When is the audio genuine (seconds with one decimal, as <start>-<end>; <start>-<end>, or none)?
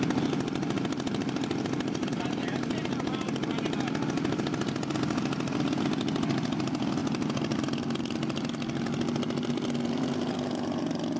0.0-2.0; 3.2-11.2